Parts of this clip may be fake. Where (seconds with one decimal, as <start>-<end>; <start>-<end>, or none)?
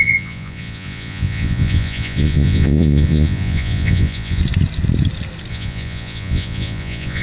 0.0-4.4; 5.5-7.2